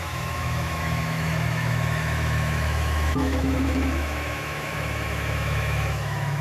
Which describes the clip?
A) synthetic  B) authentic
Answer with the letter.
A